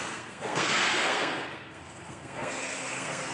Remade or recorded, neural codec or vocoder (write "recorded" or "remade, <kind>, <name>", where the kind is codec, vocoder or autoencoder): remade, codec, SNAC